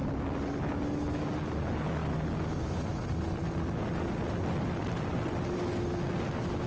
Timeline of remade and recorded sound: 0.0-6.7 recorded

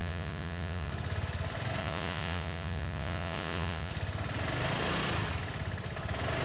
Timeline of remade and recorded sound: 0.0-0.9 remade; 0.9-1.8 recorded; 1.8-3.9 remade; 3.9-6.4 recorded